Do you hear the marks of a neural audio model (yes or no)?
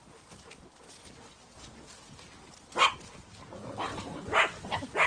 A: no